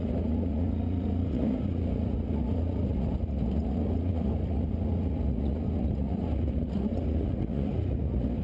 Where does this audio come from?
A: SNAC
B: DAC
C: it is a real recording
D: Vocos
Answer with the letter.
D